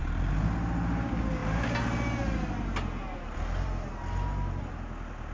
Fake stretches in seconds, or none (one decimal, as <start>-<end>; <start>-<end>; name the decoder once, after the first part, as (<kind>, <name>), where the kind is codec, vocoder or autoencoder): none